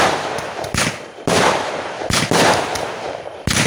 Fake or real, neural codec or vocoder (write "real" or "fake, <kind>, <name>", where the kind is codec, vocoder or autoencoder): real